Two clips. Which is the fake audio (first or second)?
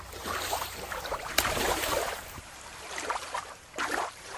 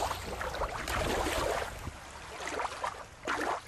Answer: first